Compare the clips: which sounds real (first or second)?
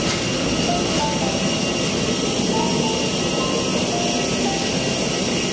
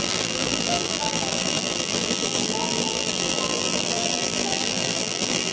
first